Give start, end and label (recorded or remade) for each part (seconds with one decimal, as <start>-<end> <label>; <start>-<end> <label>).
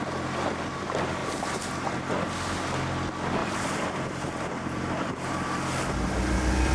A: 0.0-1.2 recorded; 1.2-2.1 remade; 2.1-3.4 recorded; 3.4-5.3 remade; 5.3-6.7 recorded